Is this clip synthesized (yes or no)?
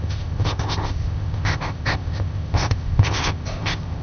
yes